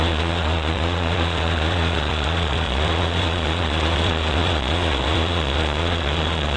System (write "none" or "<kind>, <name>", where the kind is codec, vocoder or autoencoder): vocoder, Vocos